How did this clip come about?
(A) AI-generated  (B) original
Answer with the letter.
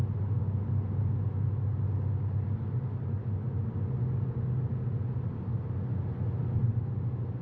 B